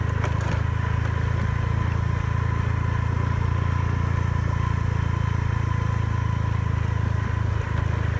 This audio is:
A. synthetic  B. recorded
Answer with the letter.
B